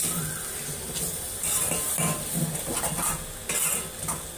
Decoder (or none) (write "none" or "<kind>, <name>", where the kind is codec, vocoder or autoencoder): none